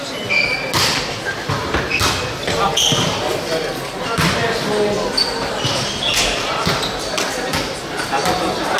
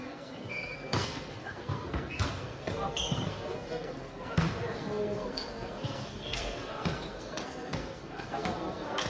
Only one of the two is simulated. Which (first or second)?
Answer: second